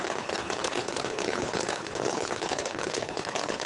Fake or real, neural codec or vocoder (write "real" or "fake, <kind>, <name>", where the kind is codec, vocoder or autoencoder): fake, codec, HILCodec